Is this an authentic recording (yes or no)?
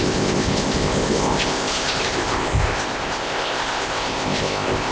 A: no